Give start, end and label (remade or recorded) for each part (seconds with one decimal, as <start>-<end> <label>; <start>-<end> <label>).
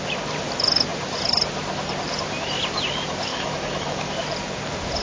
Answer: 0.0-3.3 recorded; 3.3-4.1 remade; 4.1-5.0 recorded